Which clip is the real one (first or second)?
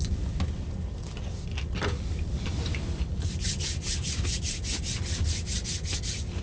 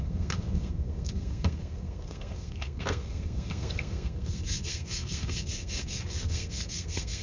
first